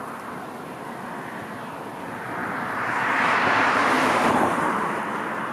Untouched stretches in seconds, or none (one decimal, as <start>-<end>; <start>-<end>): 0.0-2.4; 5.0-5.5